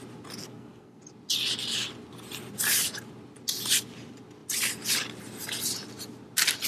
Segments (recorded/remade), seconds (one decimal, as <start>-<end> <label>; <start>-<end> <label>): 0.0-0.4 recorded; 0.4-1.0 remade; 1.0-6.7 recorded